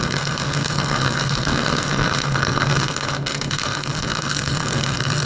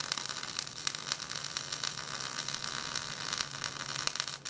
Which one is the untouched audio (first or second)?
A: second